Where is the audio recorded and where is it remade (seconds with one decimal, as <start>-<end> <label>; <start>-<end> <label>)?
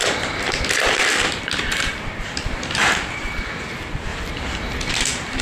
0.0-4.1 remade; 4.1-4.9 recorded; 4.9-5.4 remade